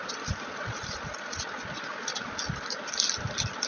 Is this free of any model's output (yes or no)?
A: yes